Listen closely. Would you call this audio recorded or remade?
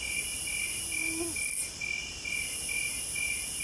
recorded